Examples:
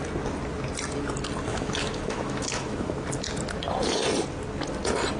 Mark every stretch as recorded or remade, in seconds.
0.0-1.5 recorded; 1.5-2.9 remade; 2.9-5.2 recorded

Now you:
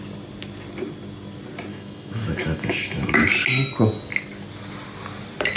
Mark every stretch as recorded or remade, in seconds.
0.0-1.7 recorded; 1.7-3.1 remade; 3.1-5.6 recorded

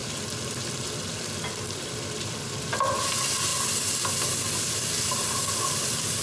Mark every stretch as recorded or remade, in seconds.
0.0-6.2 recorded

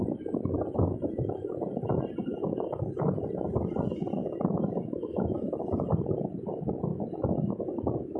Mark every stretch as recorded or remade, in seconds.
0.0-2.3 recorded; 2.3-3.0 remade; 3.0-4.2 recorded; 4.2-5.5 remade; 5.5-6.9 recorded; 6.9-8.2 remade

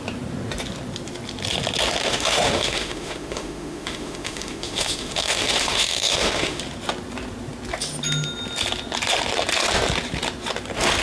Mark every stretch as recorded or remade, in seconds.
0.0-2.0 recorded; 2.0-6.6 remade; 6.6-11.0 recorded

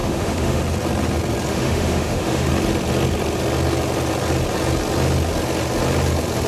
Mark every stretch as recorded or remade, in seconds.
0.0-0.6 remade; 0.6-1.5 recorded; 1.5-2.5 remade; 2.5-6.5 recorded

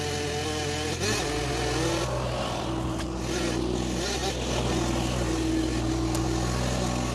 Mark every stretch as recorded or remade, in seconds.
0.0-7.1 recorded